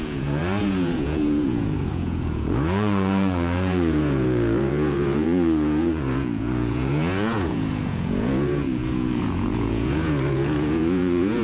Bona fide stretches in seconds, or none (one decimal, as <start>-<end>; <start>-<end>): none